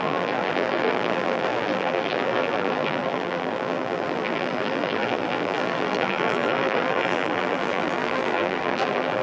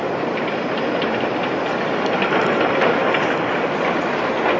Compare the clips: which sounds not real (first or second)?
first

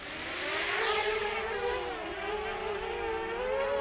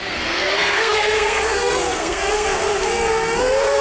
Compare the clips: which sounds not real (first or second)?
second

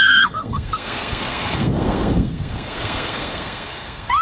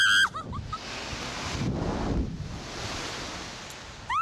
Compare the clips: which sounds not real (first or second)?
first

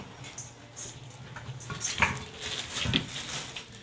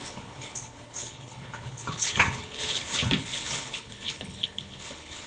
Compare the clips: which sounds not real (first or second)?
second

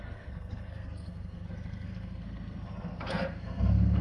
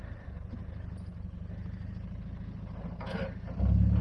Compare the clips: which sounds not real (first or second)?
first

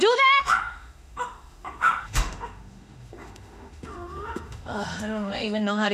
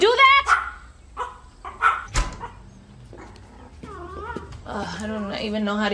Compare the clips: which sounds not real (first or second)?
first